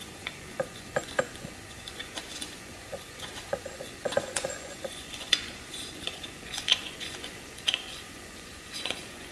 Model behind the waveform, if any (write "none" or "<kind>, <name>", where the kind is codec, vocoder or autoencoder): vocoder, Vocos